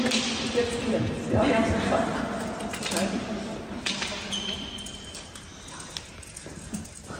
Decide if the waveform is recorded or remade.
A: recorded